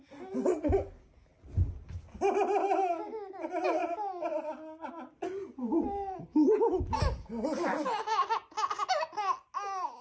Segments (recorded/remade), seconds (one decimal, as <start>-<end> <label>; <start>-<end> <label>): 0.0-10.0 recorded